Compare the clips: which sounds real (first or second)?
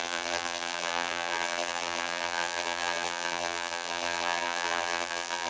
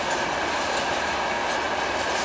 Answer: second